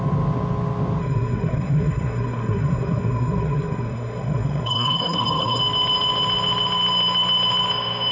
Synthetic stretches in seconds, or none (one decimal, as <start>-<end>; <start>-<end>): 1.0-5.6